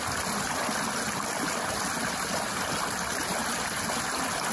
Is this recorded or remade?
recorded